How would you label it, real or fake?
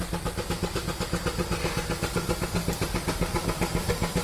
real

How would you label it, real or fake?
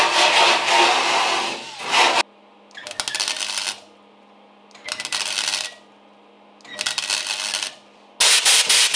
real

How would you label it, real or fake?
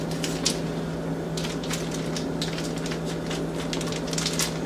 real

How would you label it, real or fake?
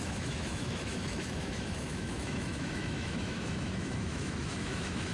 fake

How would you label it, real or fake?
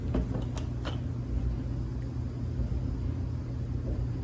real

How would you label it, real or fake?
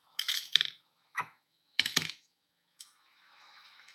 fake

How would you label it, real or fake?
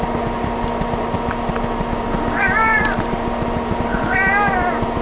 real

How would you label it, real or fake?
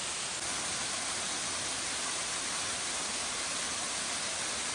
real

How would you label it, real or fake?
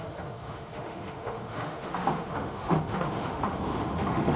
fake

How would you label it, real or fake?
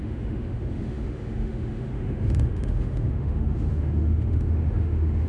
fake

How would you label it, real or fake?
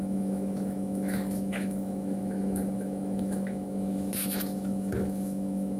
fake